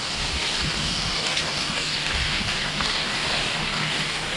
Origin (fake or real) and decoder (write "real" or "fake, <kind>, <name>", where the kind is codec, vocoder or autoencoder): fake, codec, DAC